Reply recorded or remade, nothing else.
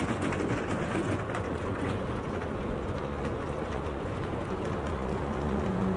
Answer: remade